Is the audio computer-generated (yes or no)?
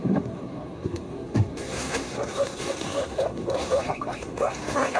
yes